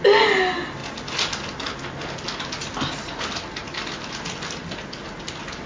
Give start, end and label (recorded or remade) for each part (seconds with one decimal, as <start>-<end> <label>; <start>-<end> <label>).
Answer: 0.0-5.7 recorded